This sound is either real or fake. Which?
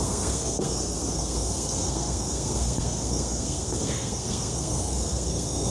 fake